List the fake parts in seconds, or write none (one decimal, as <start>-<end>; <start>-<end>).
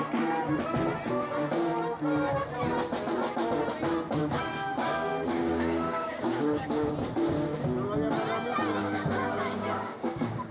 4.2-6.9; 8.8-10.5